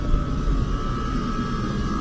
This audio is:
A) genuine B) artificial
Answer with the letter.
A